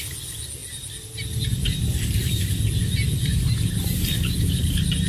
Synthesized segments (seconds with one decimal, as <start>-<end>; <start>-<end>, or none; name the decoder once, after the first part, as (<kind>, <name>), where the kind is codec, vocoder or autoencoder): none